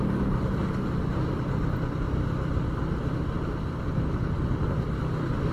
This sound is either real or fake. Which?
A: real